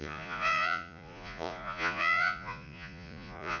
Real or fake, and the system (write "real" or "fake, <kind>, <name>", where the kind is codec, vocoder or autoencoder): fake, vocoder, Vocos